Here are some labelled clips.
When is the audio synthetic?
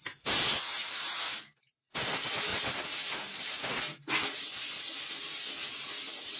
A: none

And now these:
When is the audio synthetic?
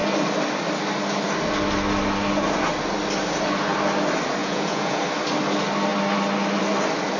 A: 4.4-5.0 (vocoder, Vocos)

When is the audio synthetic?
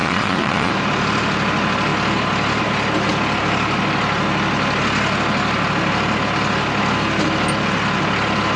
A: 0.0-0.7 (vocoder, Vocos)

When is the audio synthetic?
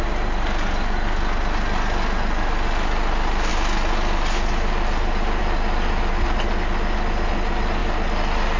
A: none